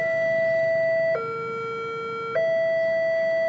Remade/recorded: recorded